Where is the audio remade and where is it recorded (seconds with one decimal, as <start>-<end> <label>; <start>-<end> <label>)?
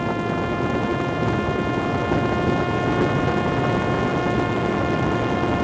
0.0-4.1 recorded; 4.1-5.6 remade